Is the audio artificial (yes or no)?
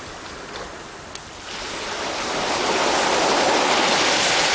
no